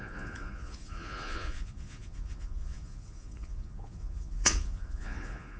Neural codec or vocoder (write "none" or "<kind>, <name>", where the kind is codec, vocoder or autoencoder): vocoder, Vocos